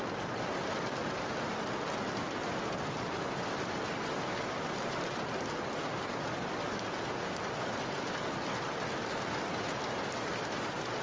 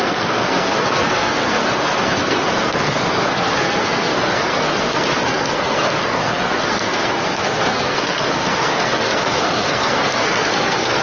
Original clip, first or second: first